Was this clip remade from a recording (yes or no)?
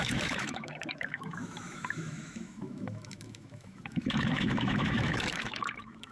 yes